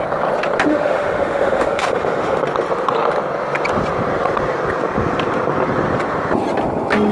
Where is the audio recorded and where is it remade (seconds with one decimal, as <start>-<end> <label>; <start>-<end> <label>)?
0.0-0.7 recorded; 0.7-2.4 remade; 2.4-7.1 recorded